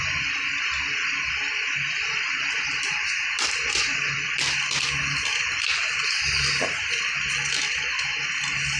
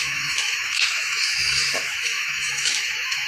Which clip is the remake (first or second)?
second